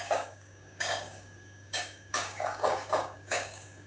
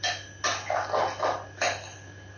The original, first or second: second